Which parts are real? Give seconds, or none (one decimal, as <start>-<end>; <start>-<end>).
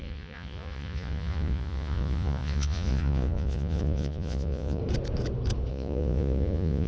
4.8-5.7